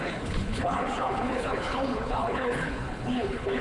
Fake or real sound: fake